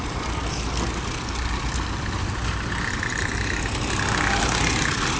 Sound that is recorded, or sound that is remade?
recorded